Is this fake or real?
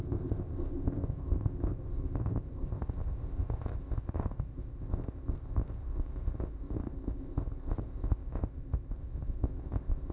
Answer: fake